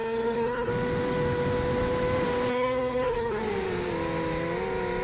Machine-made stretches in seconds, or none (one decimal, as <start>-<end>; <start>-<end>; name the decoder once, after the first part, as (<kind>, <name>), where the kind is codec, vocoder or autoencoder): 0.0-0.7 (codec, SNAC); 2.5-3.4